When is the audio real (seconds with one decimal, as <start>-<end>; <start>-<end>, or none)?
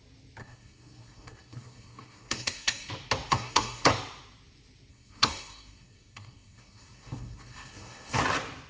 0.0-0.4; 2.9-3.3; 3.9-4.9; 8.2-8.7